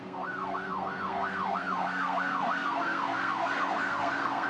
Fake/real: fake